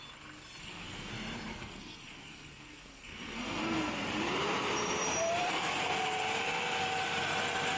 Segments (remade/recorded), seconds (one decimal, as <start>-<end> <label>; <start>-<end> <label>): 0.0-0.6 recorded; 0.6-1.1 remade; 1.1-1.5 recorded; 1.5-3.9 remade; 3.9-5.4 recorded; 5.4-5.9 remade; 5.9-7.8 recorded